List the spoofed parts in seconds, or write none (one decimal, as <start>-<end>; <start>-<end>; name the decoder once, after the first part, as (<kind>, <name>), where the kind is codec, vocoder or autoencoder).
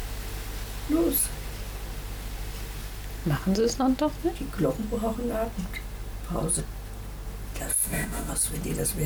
7.7-8.3 (autoencoder, DAC-VAE)